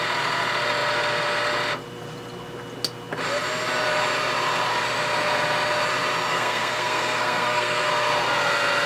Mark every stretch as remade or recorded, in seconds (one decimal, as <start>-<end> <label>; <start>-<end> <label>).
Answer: 0.0-6.3 recorded; 6.3-7.9 remade; 7.9-8.9 recorded